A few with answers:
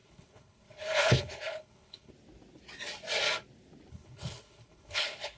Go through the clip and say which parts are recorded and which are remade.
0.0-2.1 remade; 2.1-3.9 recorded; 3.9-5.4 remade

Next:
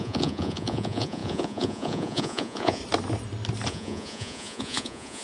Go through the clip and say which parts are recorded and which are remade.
0.0-2.8 remade; 2.8-3.7 recorded; 3.7-5.2 remade